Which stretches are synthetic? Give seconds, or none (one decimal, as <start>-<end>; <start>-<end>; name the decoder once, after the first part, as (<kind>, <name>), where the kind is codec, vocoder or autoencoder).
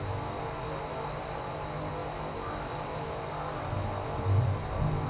none